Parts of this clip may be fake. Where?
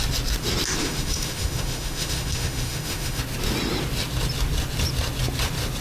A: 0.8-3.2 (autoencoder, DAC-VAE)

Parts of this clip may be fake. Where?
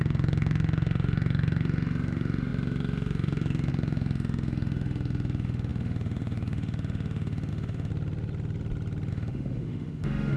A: 0.0-7.9 (autoencoder, DAC-VAE); 9.1-10.4